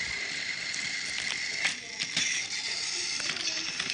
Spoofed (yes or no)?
yes